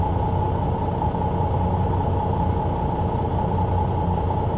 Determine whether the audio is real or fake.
real